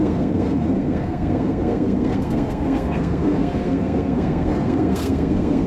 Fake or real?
fake